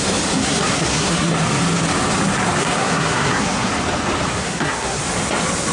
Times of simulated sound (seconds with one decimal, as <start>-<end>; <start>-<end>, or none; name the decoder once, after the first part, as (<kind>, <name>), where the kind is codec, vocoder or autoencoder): 0.4-1.3 (codec, SNAC); 2.6-3.7; 4.4-5.0